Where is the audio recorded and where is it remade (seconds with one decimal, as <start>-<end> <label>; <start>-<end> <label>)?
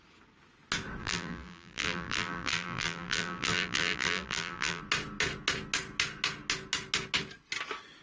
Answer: 0.0-1.0 recorded; 1.0-4.8 remade; 4.8-8.0 recorded